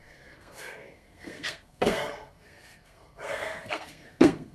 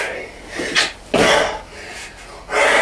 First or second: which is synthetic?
first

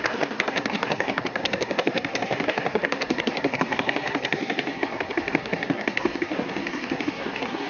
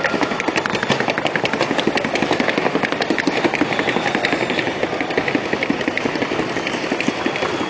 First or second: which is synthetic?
first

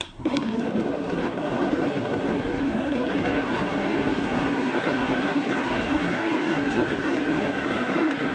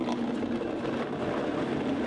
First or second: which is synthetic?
first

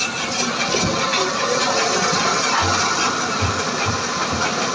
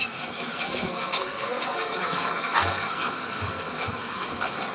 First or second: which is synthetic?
second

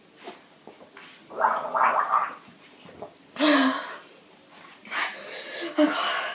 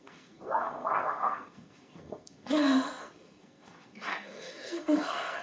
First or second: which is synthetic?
second